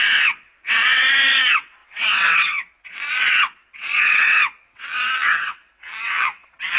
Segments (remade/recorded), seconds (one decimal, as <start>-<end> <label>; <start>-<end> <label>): 0.0-6.8 remade